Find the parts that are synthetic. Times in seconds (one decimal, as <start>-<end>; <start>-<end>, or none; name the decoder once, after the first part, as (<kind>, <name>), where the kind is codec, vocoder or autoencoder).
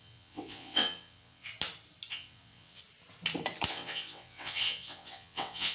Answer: 0.0-1.5 (vocoder, WaveNeXt); 2.1-2.8; 3.7-5.7